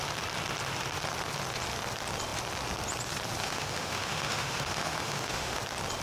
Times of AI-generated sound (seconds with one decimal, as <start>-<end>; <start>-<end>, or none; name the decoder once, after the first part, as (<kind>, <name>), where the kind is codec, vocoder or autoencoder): 3.4-5.6 (autoencoder, DAC-VAE)